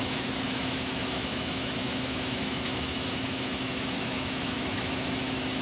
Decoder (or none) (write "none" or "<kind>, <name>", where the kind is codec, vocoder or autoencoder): autoencoder, DAC-VAE